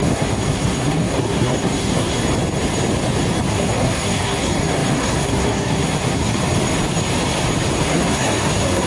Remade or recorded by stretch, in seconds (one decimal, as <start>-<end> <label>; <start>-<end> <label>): 0.0-2.2 remade; 2.2-3.5 recorded; 3.5-6.4 remade; 6.4-7.8 recorded; 7.8-8.9 remade